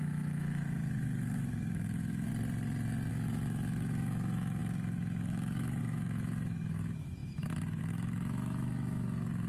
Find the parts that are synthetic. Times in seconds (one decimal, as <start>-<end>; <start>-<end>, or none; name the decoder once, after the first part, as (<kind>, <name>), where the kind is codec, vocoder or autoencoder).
0.0-2.3 (autoencoder, DAC-VAE); 3.1-9.5